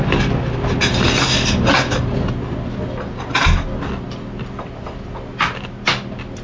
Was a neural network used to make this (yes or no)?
no